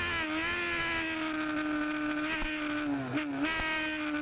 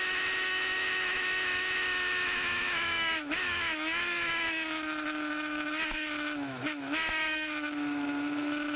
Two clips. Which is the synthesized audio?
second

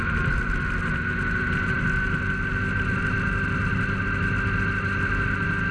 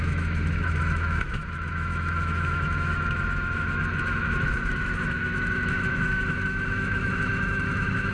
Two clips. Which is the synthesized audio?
second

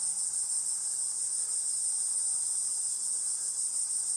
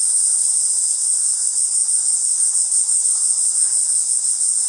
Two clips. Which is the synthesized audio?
second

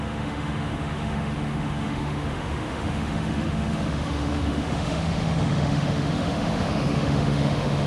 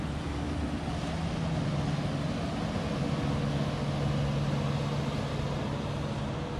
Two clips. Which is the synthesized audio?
first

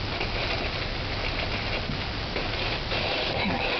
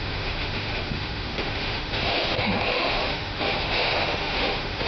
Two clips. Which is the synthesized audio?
second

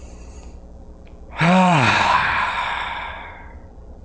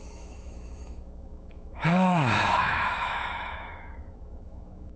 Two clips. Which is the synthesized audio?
second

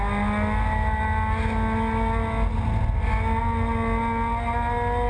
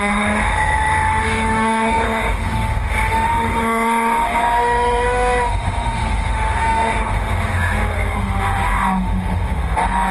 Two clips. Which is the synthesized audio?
second